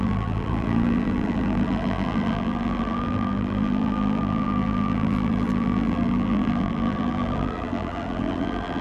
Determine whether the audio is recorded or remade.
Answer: remade